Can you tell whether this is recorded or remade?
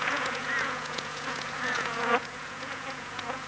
remade